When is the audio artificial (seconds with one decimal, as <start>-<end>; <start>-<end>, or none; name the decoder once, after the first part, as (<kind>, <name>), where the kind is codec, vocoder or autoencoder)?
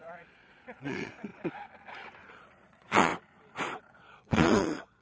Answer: 0.0-1.3 (vocoder, Vocos); 2.3-3.1; 3.8-5.0